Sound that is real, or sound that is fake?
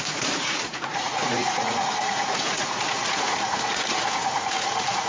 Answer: fake